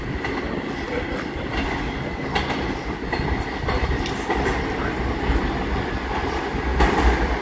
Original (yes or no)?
yes